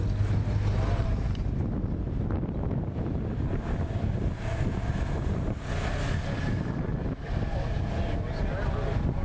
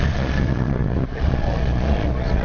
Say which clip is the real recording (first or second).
first